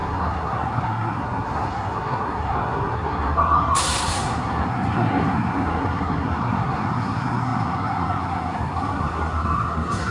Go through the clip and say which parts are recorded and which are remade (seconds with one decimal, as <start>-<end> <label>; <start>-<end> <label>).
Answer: 0.0-10.1 remade